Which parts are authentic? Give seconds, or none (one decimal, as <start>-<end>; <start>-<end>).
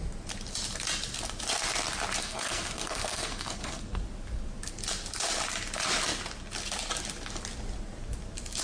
0.0-2.2; 4.0-8.6